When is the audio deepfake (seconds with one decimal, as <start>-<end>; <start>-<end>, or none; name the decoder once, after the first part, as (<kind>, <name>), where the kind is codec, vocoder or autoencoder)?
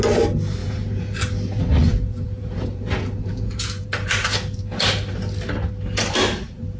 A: 0.6-1.2 (vocoder, Vocos); 1.9-3.9